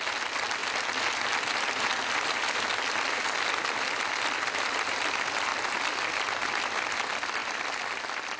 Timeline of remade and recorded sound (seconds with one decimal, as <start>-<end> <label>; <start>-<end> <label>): 0.0-8.4 recorded